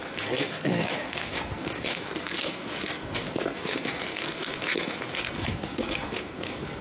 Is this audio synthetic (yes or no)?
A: yes